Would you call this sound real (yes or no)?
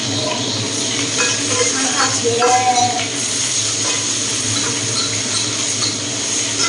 yes